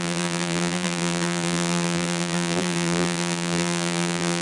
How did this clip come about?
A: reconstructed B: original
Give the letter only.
A